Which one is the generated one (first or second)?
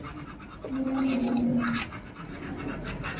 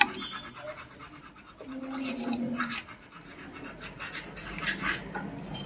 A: second